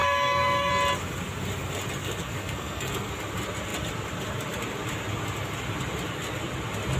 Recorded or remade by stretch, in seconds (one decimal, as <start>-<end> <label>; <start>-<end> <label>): 0.0-0.7 remade; 0.7-2.0 recorded; 2.0-3.1 remade; 3.1-7.0 recorded